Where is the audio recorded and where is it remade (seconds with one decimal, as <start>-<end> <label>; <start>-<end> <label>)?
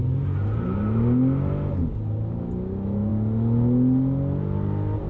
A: 0.0-5.1 recorded